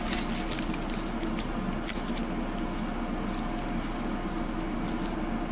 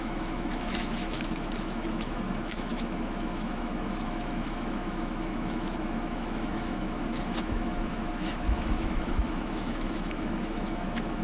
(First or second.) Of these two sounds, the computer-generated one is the second